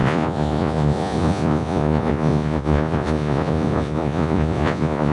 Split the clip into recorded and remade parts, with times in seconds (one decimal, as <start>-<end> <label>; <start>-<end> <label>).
0.0-5.1 remade